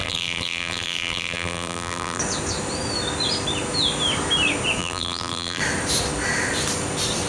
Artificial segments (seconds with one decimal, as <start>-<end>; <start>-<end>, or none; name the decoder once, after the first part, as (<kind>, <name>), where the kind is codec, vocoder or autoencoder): 0.0-2.2 (vocoder, BigVGAN v2); 4.8-5.6